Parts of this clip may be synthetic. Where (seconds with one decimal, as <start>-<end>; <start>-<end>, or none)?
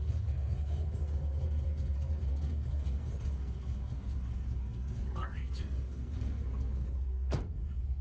0.0-8.0